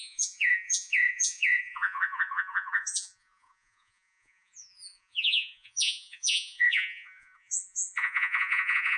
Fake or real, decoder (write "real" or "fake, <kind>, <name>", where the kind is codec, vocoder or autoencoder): fake, vocoder, Vocos